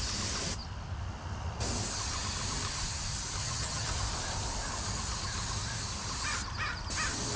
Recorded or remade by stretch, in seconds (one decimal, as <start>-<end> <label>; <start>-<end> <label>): 0.0-3.4 recorded; 3.4-3.9 remade; 3.9-7.4 recorded